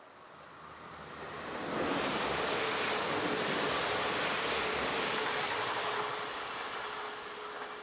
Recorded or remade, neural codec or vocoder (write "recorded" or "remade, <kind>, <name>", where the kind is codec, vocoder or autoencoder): recorded